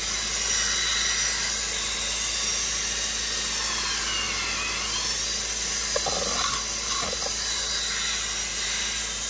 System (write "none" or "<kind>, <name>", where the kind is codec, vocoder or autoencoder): none